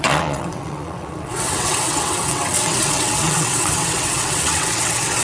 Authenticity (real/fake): fake